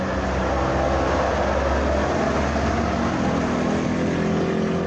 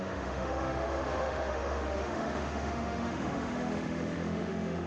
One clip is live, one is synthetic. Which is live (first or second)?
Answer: first